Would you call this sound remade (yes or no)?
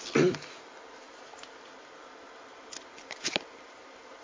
yes